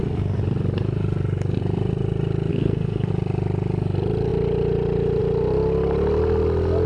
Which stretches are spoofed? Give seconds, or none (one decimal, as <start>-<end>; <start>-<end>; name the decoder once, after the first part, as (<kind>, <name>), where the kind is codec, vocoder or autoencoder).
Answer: 2.5-3.1 (codec, SNAC)

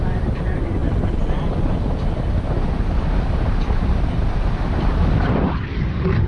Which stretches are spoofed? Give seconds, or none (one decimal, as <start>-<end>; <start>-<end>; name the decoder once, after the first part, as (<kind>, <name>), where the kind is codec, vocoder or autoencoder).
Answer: none

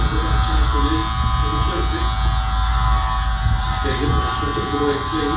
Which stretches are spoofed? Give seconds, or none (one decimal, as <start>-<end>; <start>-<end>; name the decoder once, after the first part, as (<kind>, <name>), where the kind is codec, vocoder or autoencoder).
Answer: none

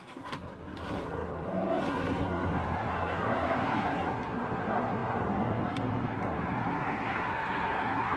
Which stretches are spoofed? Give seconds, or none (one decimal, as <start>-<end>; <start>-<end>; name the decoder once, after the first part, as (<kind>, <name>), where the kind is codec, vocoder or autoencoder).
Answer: 0.0-8.2 (codec, SNAC)

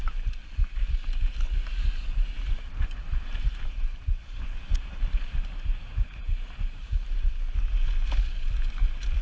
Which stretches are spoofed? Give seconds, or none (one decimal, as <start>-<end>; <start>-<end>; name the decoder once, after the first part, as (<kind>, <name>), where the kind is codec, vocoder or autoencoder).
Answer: 3.0-7.5 (vocoder, BigVGAN v2)

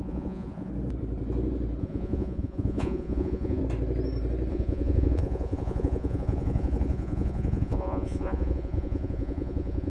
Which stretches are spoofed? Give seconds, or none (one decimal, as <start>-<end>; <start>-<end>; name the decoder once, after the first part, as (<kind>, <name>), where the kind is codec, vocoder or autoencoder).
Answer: 0.0-0.7 (vocoder, Vocos); 1.8-3.6; 4.5-9.9

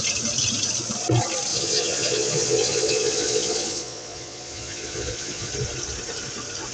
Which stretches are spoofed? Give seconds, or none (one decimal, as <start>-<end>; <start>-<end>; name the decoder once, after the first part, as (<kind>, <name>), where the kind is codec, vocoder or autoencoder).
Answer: 1.5-5.5 (vocoder, Vocos)